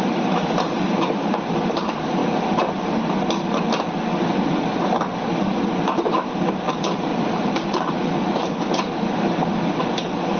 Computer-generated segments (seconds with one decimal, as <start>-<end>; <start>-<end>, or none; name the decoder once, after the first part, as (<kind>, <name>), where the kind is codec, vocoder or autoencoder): 0.0-2.2 (vocoder, BigVGAN v2); 4.4-5.1; 5.7-10.4